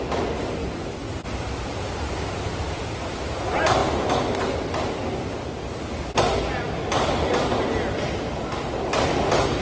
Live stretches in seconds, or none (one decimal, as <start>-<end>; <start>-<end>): 0.0-9.6